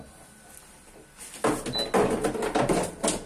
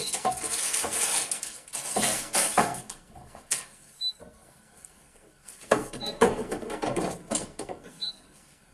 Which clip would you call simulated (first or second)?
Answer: second